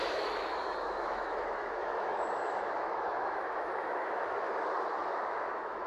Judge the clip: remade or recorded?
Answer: remade